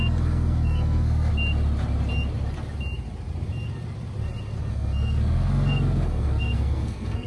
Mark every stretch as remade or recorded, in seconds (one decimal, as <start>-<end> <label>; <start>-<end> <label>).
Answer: 0.0-1.3 remade; 1.3-4.7 recorded; 4.7-7.3 remade